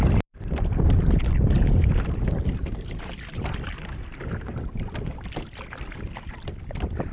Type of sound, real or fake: real